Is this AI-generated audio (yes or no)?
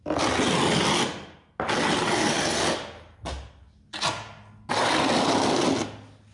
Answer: no